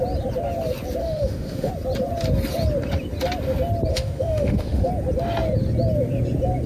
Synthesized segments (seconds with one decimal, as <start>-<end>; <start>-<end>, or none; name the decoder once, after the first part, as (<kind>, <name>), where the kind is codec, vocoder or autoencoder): 1.0-1.7 (autoencoder, DAC-VAE); 3.9-4.9